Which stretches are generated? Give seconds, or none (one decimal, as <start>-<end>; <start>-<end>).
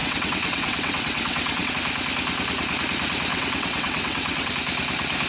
0.0-1.7; 3.3-4.5